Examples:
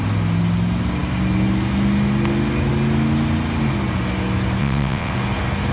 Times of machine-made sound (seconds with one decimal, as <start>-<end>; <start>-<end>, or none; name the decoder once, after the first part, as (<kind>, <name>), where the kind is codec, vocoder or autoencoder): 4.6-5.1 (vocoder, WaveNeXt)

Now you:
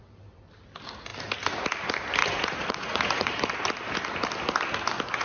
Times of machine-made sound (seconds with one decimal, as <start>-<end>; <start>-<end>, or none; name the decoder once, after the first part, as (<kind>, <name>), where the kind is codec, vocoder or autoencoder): 2.2-3.4 (vocoder, Vocos)

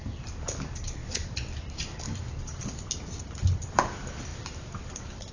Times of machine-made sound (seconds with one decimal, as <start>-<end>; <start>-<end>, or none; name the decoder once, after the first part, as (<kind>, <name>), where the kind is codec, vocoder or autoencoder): 1.0-2.4 (vocoder, BigVGAN v2); 4.3-5.3

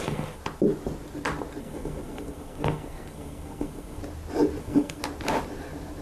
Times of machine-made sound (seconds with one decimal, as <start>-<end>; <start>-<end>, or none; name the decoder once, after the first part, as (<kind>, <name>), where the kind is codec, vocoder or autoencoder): 0.0-0.4 (codec, SNAC); 1.6-4.0; 4.6-5.0

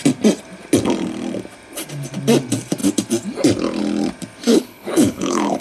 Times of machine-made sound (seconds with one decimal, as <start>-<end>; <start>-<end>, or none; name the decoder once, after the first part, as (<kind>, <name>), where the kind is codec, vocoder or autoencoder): 4.5-5.6 (codec, HILCodec)